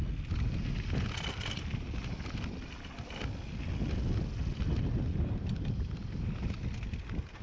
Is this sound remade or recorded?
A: recorded